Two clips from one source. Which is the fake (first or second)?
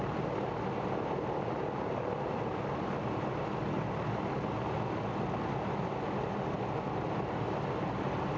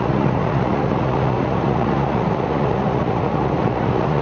second